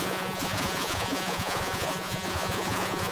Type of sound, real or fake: fake